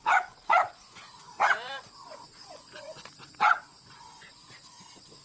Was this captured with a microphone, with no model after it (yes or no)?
no